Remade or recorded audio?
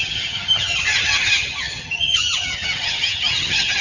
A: remade